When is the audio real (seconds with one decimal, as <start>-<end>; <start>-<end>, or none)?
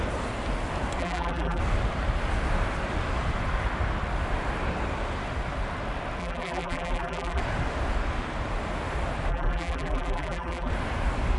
0.0-1.0; 1.6-6.2; 7.4-9.3; 10.7-11.4